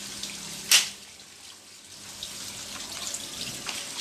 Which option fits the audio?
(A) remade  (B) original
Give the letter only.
B